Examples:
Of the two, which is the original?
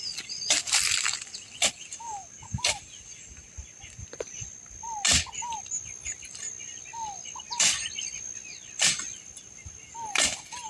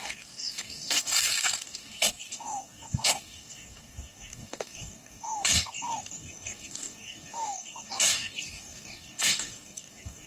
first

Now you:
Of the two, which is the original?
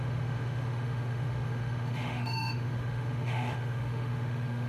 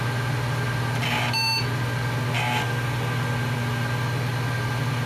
second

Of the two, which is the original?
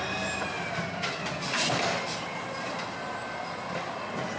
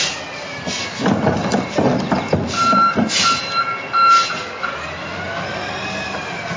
first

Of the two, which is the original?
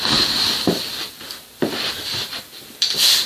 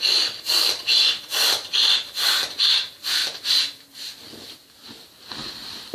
second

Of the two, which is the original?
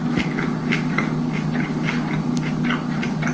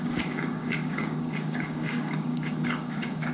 first